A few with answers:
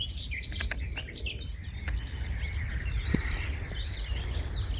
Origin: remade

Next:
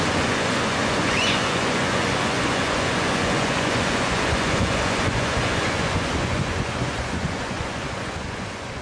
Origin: remade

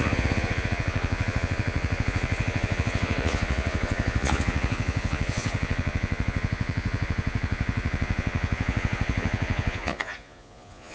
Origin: remade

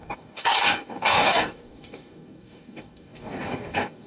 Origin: remade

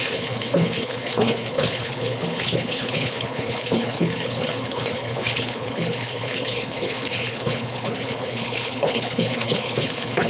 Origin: remade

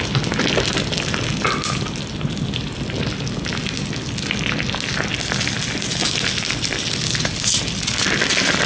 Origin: recorded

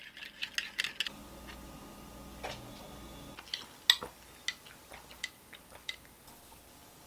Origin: recorded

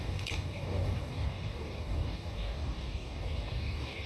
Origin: remade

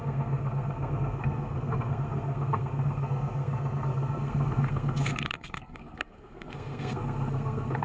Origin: remade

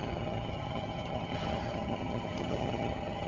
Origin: remade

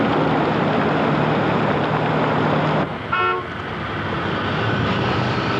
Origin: recorded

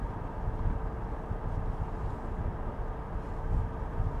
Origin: recorded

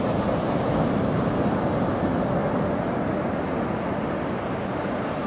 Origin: recorded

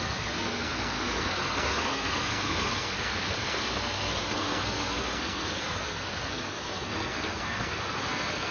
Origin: remade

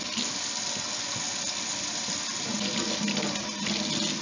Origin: recorded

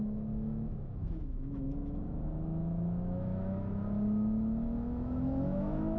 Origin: remade